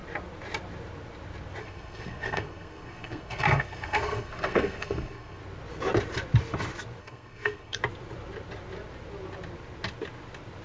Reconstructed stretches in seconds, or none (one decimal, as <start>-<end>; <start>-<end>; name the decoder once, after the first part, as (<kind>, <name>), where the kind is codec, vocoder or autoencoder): 1.6-5.4 (codec, SNAC); 7.0-7.8